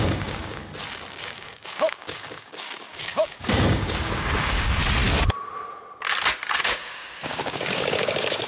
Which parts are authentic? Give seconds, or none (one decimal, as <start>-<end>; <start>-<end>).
0.6-1.1; 4.8-6.6